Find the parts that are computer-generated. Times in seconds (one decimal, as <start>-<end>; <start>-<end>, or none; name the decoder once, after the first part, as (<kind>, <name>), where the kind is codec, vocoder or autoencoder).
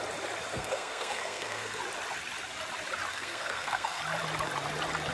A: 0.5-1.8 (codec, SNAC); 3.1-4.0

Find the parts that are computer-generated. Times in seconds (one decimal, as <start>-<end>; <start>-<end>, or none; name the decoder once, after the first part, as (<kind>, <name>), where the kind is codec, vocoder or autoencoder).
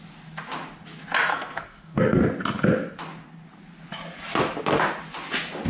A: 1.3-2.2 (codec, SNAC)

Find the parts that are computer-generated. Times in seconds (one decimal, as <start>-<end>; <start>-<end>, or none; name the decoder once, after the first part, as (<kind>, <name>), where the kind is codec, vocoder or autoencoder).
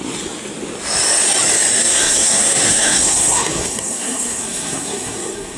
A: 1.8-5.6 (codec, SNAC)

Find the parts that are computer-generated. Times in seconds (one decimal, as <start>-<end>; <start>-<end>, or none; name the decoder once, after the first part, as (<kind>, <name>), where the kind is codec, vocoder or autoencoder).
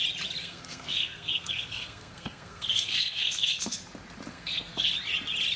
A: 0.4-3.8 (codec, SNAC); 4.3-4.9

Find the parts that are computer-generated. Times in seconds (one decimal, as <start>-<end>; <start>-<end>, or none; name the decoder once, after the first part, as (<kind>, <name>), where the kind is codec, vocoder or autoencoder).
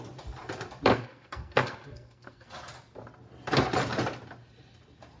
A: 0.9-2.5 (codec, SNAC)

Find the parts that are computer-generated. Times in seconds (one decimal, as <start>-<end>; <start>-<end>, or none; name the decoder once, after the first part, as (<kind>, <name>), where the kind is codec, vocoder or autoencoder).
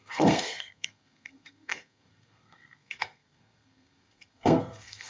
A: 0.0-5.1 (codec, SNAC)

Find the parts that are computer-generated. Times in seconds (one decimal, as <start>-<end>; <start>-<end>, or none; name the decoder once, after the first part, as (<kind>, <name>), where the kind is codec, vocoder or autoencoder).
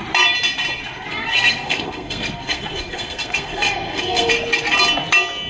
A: 1.1-4.3 (codec, SNAC)